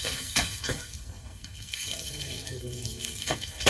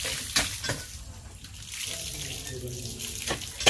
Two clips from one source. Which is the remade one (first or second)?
first